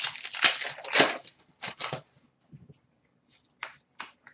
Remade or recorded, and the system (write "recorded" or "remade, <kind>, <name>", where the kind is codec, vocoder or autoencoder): recorded